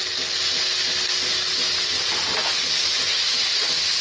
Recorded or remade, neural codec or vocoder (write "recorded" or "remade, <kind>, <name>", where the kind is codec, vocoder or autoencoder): recorded